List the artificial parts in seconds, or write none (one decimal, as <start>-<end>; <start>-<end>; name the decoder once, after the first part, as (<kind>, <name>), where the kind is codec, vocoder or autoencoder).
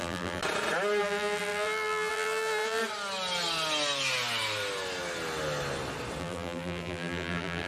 0.0-0.4 (vocoder, BigVGAN v2); 1.0-2.8; 6.2-7.7